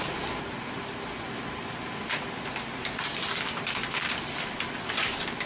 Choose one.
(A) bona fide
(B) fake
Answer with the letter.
A